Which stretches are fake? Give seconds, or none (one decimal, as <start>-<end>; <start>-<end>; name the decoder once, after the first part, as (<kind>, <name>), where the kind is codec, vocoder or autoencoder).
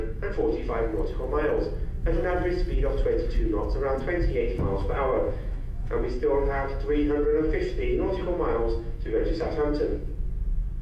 0.0-0.9 (autoencoder, DAC-VAE); 4.4-10.1